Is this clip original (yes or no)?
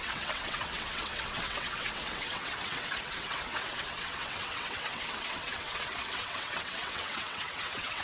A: no